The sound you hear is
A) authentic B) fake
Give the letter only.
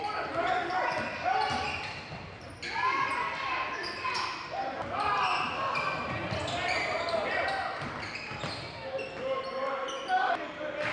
A